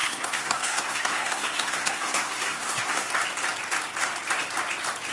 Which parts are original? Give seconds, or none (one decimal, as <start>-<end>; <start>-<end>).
3.1-5.1